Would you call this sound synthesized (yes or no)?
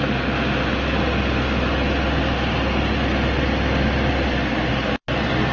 no